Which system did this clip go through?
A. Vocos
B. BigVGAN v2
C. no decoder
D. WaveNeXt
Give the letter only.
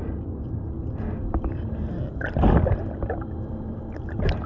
C